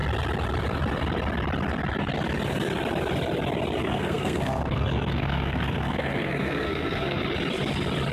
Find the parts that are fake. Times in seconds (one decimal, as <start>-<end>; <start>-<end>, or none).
3.8-7.2